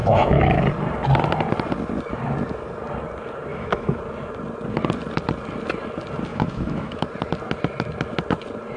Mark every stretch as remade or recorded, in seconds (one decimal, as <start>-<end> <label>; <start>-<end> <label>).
0.0-0.6 remade; 0.6-3.5 recorded; 3.5-4.0 remade; 4.0-6.3 recorded; 6.3-7.1 remade; 7.1-8.8 recorded